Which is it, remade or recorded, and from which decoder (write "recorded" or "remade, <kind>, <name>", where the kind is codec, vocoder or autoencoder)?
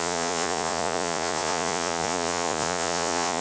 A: remade, vocoder, Vocos